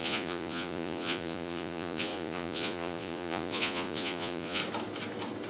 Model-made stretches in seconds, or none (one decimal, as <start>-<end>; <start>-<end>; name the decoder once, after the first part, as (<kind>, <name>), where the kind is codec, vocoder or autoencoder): 0.0-4.6 (vocoder, Vocos)